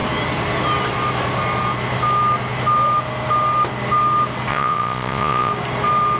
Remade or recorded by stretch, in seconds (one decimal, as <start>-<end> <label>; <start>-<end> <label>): 0.0-4.5 recorded; 4.5-5.5 remade; 5.5-6.2 recorded